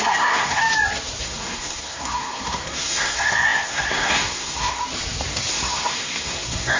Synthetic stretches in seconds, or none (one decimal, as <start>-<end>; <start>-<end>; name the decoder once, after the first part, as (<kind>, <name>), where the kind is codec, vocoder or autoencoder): 0.0-0.6 (codec, SNAC); 1.2-4.8; 5.5-6.8

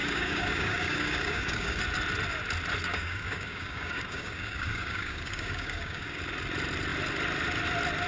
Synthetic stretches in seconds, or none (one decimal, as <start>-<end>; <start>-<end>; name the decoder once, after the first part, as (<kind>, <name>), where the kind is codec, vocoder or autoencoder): 0.0-1.8 (codec, DAC); 2.9-6.2